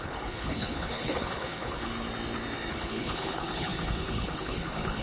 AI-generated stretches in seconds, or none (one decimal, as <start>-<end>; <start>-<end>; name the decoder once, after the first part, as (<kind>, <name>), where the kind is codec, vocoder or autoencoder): 0.0-1.9 (codec, HILCodec); 2.7-5.0